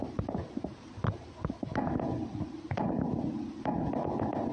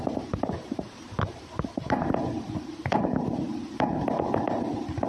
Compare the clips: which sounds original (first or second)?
first